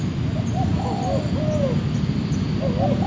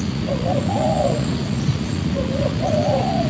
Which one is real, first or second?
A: first